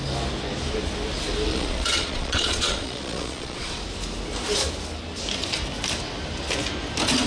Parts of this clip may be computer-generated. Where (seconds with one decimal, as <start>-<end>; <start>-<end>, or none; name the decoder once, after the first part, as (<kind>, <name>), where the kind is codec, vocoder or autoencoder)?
1.5-3.8 (vocoder, Vocos)